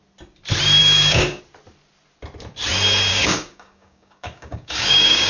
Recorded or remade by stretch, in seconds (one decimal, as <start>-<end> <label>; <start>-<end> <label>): 0.0-0.8 recorded; 0.8-1.4 remade; 1.4-3.1 recorded; 3.1-5.3 remade